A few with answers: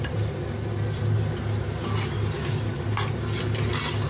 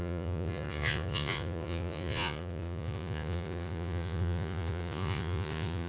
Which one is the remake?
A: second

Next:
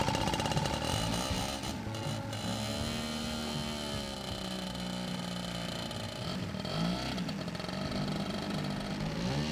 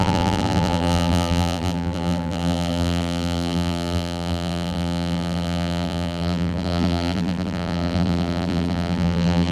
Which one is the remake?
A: second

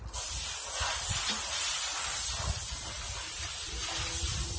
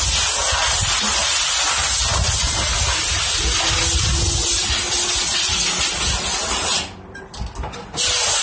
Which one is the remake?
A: first